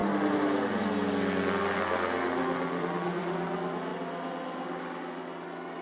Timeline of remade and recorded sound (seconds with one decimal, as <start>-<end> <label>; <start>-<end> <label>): 0.0-5.8 recorded